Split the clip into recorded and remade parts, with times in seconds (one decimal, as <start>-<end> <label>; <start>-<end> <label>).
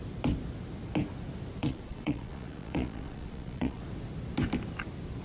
0.0-1.6 recorded; 1.6-3.8 remade; 3.8-5.2 recorded